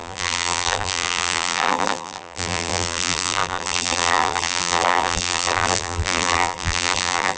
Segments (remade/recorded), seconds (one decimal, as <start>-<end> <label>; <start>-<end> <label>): 0.0-7.4 remade